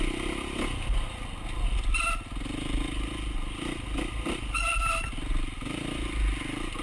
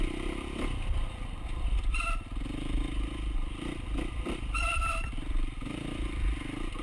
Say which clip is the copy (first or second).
second